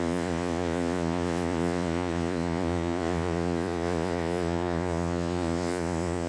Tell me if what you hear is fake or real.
fake